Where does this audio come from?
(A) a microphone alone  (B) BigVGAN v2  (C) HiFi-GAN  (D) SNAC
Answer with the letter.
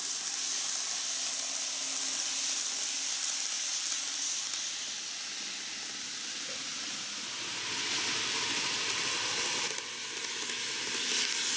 A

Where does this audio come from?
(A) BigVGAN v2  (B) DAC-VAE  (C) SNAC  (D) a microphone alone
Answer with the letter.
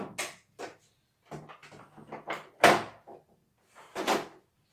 D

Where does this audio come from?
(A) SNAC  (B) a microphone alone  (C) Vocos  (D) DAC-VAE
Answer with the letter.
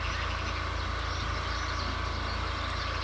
B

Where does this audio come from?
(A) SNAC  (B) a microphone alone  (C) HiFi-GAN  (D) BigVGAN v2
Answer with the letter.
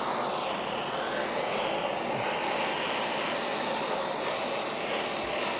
B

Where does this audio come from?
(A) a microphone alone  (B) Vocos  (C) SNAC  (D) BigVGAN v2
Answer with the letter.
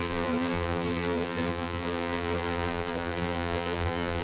D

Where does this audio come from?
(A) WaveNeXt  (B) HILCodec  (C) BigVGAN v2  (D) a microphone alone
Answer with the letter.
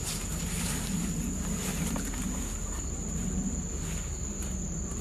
D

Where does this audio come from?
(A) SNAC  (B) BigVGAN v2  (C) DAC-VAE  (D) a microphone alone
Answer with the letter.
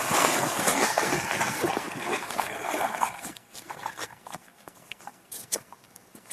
A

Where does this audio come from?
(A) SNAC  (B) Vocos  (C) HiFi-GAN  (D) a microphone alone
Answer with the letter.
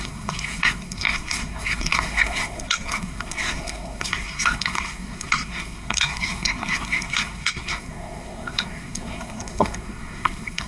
A